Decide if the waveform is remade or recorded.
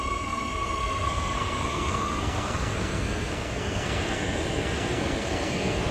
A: remade